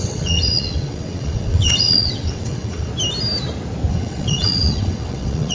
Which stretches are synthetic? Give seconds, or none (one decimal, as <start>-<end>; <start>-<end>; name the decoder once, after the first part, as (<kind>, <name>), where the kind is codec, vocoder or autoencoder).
0.0-2.9 (vocoder, WaveNeXt); 3.9-5.5